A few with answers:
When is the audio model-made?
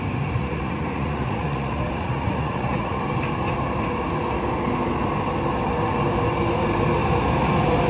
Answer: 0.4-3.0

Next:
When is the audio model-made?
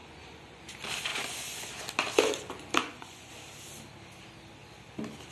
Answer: 0.0-0.6; 1.1-1.7; 2.8-3.3